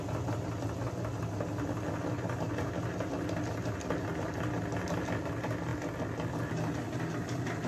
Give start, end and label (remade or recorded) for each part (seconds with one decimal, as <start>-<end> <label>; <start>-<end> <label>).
0.0-7.7 recorded